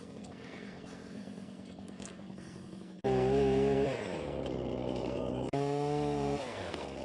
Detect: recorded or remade remade